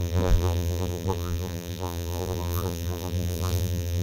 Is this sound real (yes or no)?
no